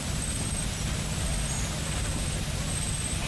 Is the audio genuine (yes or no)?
yes